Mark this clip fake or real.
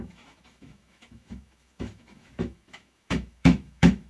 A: fake